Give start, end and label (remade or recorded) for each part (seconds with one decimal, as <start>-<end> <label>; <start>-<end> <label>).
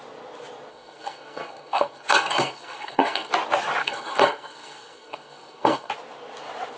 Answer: 0.0-0.7 recorded; 0.7-3.3 remade; 3.3-3.8 recorded; 3.8-5.9 remade; 5.9-6.8 recorded